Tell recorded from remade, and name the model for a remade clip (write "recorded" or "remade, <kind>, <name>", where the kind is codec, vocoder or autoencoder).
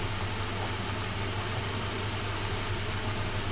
recorded